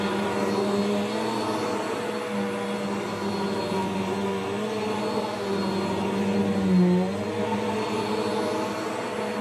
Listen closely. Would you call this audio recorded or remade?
recorded